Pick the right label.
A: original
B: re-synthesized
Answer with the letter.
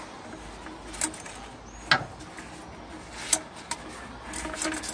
A